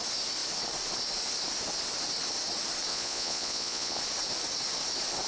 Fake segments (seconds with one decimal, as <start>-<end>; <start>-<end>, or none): 2.9-4.0